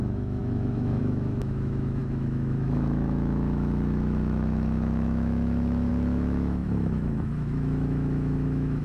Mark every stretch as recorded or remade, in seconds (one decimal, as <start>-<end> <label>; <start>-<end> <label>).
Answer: 0.0-8.8 remade